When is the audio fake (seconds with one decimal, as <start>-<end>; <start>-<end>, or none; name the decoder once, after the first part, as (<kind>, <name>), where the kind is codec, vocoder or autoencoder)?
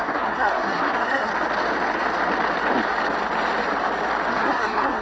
0.0-1.3 (codec, SNAC); 4.3-5.0